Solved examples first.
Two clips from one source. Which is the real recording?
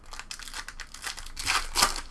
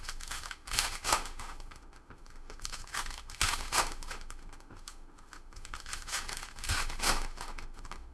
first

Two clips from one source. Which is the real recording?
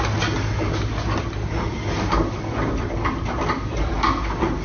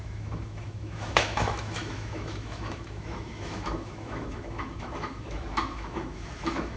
first